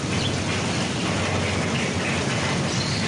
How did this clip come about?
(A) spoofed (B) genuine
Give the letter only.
B